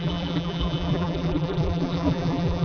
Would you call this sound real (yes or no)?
no